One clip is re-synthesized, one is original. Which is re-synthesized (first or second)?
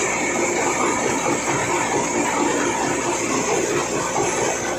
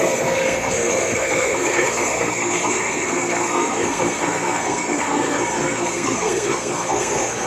second